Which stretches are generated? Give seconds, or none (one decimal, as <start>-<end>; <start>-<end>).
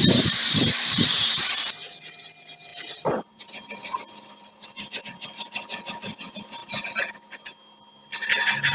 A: 0.0-1.5; 2.7-5.0